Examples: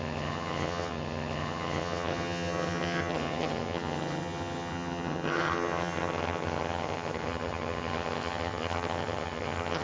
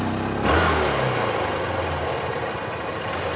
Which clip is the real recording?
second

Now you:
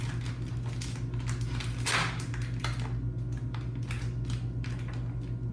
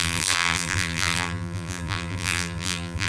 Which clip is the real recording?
first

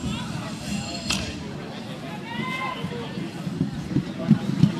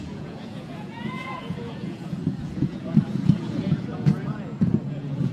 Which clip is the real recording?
first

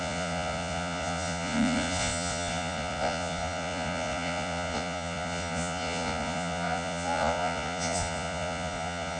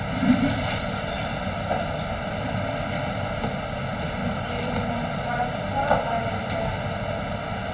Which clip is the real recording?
second